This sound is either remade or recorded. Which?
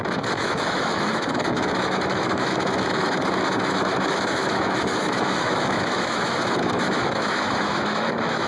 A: remade